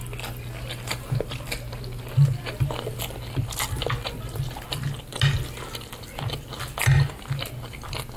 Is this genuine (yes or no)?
yes